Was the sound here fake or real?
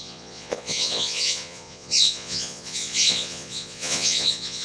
fake